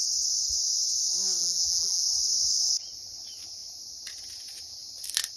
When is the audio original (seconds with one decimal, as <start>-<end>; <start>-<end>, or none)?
0.0-1.4; 2.0-5.4